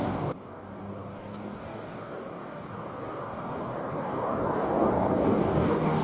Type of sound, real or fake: fake